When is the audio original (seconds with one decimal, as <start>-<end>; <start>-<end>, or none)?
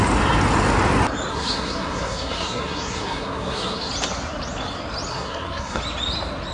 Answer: 0.0-1.3; 3.9-5.1; 5.8-6.5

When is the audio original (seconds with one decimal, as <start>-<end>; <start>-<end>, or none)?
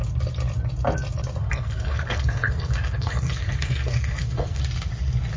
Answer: 0.0-1.4; 4.6-5.4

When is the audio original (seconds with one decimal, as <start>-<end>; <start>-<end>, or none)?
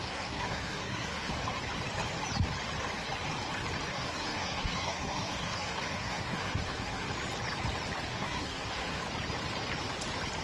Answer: 1.3-3.9; 7.1-8.1; 9.0-10.4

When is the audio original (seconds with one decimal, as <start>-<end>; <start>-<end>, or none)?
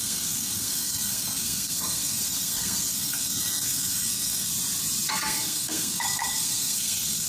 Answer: 4.5-5.1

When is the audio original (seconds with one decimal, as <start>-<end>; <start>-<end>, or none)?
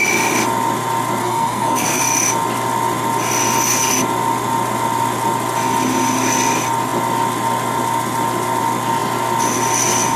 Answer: 0.0-1.2; 2.0-10.2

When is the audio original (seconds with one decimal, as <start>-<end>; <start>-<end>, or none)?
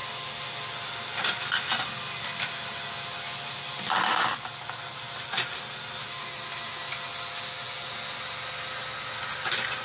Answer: 0.0-9.8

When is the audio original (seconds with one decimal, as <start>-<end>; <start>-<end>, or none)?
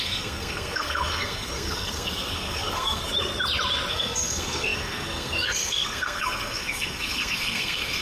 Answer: 3.1-3.9